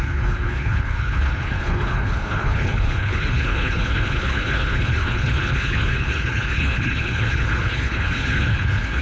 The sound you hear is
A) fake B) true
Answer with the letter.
A